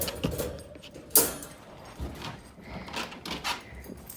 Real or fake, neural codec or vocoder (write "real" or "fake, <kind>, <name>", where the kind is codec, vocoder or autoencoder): real